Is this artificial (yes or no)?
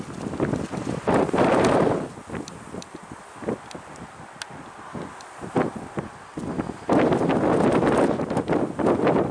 no